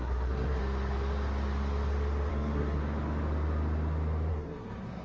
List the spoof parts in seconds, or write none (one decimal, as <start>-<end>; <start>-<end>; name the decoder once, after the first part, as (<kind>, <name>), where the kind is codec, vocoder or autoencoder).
0.0-0.6 (codec, SNAC); 2.3-2.8; 4.3-5.0